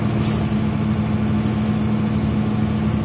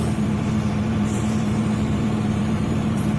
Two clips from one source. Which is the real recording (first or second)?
first